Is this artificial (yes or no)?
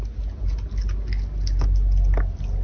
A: no